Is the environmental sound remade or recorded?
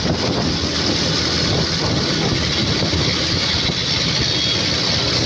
recorded